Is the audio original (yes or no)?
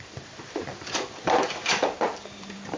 no